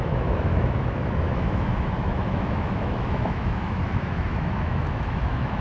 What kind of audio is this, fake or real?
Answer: fake